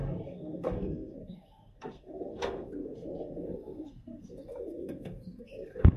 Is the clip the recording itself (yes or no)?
no